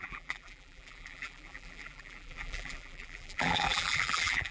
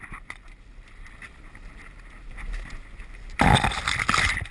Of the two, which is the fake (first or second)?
first